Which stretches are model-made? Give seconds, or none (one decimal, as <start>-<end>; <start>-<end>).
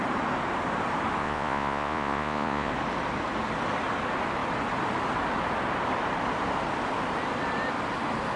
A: 1.2-2.7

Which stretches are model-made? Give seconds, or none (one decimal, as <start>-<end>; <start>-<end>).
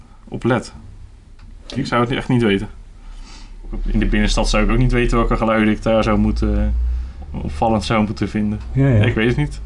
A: none